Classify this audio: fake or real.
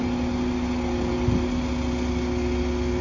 real